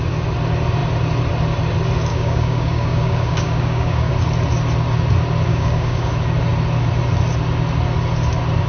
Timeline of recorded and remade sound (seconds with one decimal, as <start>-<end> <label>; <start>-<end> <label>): 0.0-2.1 recorded; 2.1-4.1 remade; 4.1-5.5 recorded; 5.5-6.1 remade; 6.1-8.7 recorded